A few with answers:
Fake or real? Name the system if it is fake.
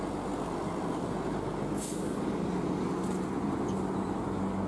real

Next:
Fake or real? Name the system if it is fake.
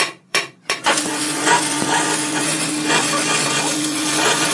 fake, vocoder, Vocos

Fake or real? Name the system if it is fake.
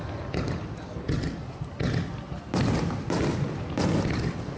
real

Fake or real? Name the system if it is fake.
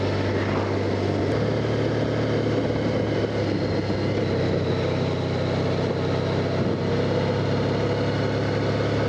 real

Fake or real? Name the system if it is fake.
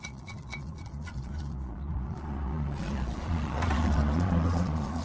fake, vocoder, Vocos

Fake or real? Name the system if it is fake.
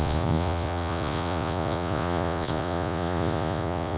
fake, vocoder, Vocos